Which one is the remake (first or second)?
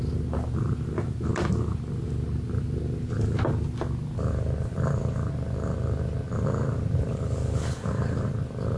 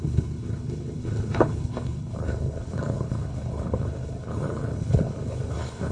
second